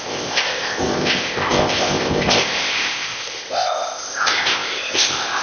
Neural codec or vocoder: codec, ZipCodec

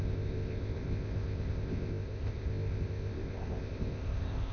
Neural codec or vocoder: codec, ZipCodec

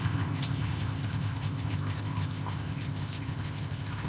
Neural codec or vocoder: codec, ZipCodec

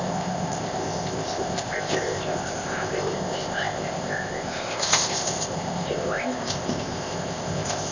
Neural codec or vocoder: codec, ZipCodec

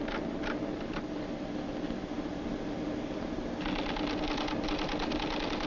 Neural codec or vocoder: none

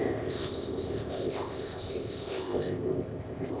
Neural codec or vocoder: codec, ZipCodec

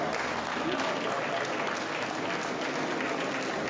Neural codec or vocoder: none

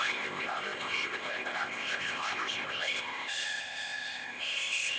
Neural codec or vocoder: codec, ZipCodec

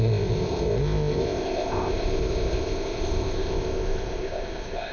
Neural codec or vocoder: codec, ZipCodec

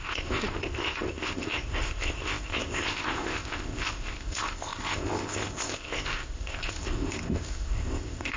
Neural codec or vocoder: codec, ZipCodec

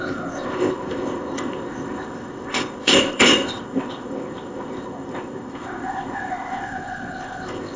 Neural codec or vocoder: codec, ZipCodec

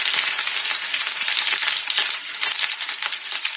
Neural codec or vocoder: none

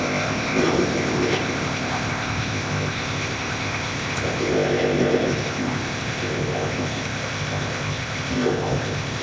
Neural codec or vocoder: codec, ZipCodec